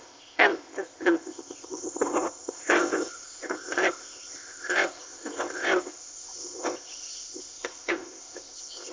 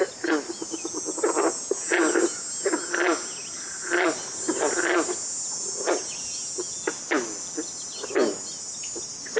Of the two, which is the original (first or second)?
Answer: second